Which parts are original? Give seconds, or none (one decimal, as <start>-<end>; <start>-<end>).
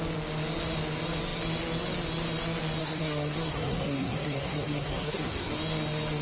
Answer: 0.0-2.8; 5.5-6.2